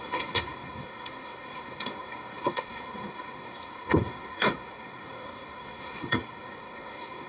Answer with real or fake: fake